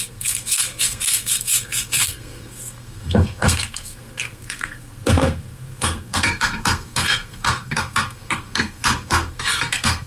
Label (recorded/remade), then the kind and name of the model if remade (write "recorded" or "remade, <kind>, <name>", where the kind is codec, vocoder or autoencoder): remade, codec, SNAC